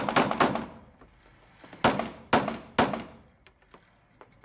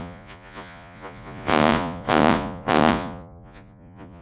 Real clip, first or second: first